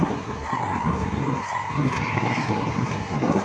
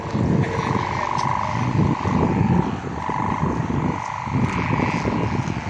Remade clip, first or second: first